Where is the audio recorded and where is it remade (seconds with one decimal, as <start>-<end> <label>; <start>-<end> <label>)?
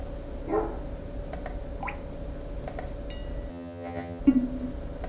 0.0-3.5 recorded; 3.5-4.2 remade; 4.2-5.1 recorded